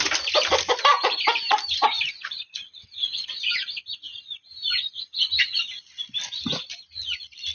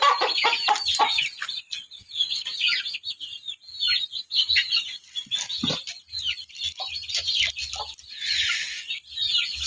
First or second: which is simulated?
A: first